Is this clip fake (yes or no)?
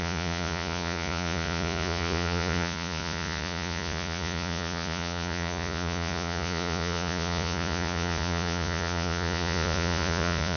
yes